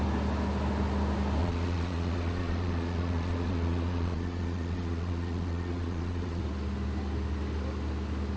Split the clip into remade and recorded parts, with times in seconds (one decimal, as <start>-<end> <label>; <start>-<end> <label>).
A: 0.0-1.4 recorded; 1.4-6.4 remade; 6.4-8.4 recorded